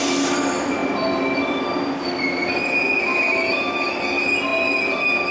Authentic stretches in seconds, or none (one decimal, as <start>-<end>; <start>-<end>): 0.0-3.1; 4.0-5.3